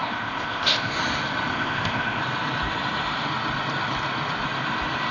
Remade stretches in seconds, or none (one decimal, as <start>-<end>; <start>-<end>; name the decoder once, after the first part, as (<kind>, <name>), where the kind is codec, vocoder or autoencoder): 0.0-1.0 (codec, ZipCodec); 1.5-2.2